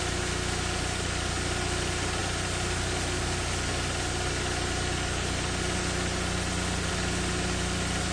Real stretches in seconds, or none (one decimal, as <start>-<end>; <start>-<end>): 0.0-8.1